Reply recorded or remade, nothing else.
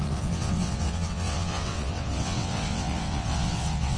remade